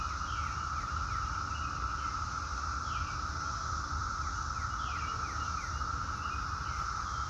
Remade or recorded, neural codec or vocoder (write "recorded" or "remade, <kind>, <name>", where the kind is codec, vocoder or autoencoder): recorded